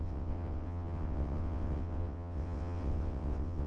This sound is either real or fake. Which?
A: fake